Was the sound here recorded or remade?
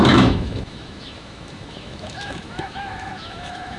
remade